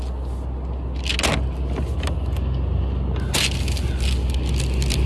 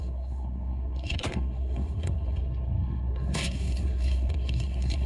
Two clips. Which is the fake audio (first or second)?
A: second